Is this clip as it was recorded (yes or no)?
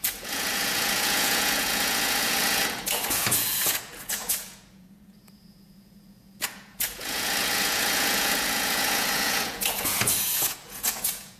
no